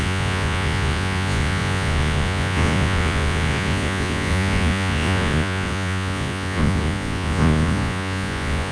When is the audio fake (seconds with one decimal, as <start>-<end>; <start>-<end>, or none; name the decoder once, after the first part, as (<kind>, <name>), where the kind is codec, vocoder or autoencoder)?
0.0-8.7 (vocoder, Vocos)